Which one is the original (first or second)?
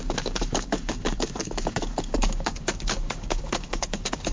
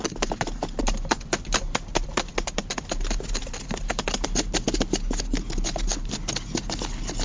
second